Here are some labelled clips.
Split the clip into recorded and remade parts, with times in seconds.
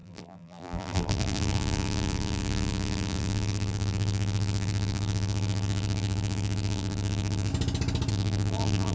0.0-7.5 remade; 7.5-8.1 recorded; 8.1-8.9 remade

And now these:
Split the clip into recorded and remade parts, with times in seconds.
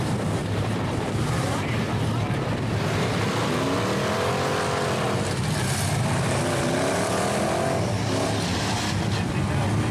0.0-0.4 recorded; 0.4-2.0 remade; 2.0-9.9 recorded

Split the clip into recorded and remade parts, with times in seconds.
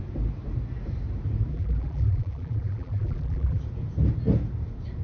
0.0-1.5 recorded; 1.5-3.6 remade; 3.6-5.0 recorded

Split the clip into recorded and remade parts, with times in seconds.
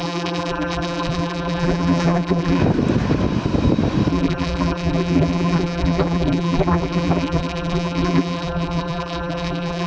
0.0-2.6 remade; 2.6-4.1 recorded; 4.1-9.9 remade